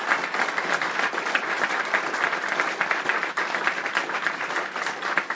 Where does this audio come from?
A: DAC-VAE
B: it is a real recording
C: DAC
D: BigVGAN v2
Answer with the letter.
B